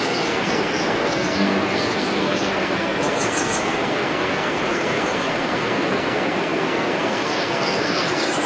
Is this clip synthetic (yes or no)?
yes